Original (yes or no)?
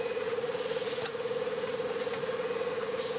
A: no